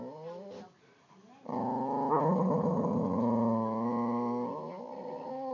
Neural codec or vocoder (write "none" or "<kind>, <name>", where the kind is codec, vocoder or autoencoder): none